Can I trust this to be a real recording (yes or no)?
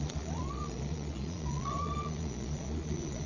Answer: no